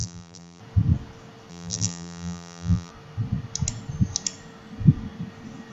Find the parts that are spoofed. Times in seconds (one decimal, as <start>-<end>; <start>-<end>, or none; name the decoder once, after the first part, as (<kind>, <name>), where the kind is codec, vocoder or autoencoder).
0.0-0.6 (vocoder, BigVGAN v2); 1.5-2.9